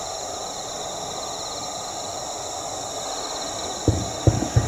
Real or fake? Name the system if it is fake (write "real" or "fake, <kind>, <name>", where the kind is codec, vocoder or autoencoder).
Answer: real